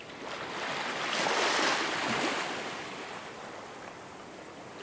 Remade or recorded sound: recorded